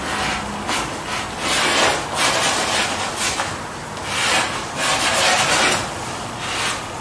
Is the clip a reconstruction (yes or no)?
no